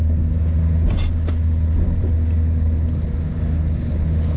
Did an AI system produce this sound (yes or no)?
no